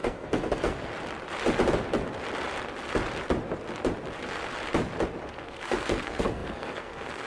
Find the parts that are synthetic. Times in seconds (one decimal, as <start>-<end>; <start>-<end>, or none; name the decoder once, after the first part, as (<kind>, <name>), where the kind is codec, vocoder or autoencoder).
0.0-0.9 (codec, SNAC); 5.3-7.3